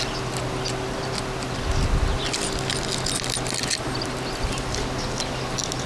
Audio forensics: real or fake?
real